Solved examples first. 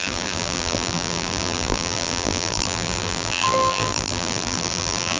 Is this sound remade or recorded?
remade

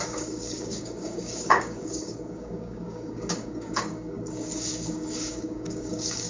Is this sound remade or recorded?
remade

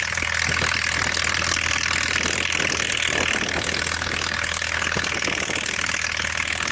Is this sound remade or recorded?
recorded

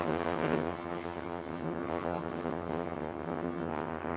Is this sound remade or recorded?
remade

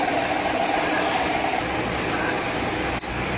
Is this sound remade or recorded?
recorded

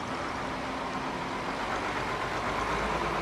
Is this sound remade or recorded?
recorded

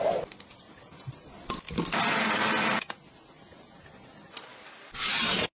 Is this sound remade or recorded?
recorded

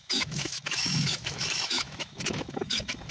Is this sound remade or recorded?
remade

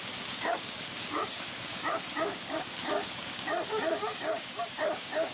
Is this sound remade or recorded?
remade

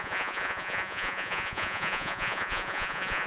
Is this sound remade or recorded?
remade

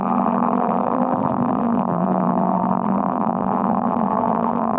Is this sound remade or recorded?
remade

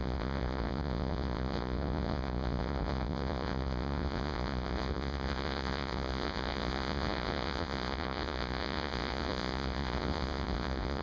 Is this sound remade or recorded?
remade